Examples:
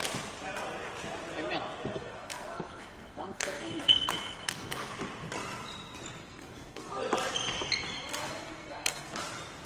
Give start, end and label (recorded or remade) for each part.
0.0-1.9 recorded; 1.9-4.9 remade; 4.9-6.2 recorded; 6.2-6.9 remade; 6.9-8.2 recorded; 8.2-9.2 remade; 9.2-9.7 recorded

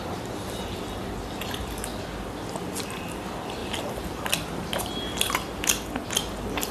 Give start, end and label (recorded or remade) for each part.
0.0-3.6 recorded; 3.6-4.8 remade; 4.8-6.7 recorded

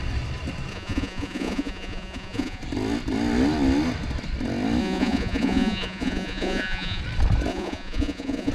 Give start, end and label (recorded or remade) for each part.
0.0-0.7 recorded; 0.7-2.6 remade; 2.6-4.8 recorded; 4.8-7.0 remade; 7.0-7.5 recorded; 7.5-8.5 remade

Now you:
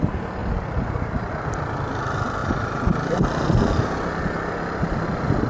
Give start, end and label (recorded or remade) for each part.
0.0-0.4 recorded; 0.4-1.3 remade; 1.3-2.4 recorded; 2.4-3.4 remade; 3.4-5.5 recorded

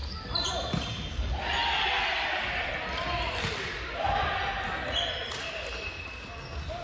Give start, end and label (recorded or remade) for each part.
0.0-6.8 recorded

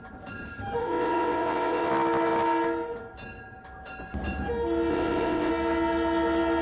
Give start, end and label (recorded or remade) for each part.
0.0-0.8 recorded; 0.8-1.9 remade; 1.9-4.9 recorded; 4.9-5.5 remade; 5.5-6.6 recorded